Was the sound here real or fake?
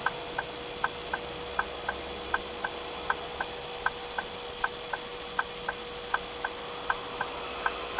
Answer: real